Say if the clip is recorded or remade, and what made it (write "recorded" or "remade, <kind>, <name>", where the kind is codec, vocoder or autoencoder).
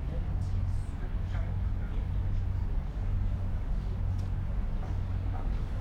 remade, codec, DAC